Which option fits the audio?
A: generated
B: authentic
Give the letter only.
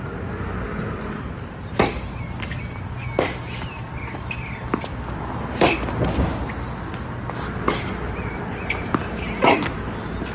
B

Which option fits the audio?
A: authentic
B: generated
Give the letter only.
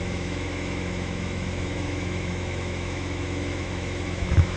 B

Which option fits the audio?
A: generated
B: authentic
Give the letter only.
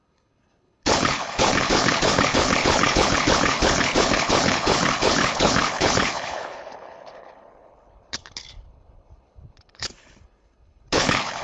A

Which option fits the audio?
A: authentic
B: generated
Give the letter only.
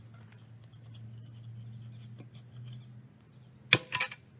A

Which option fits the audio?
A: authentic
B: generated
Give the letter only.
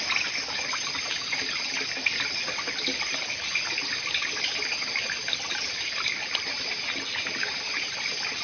A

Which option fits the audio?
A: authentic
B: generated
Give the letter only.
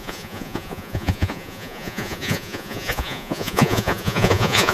B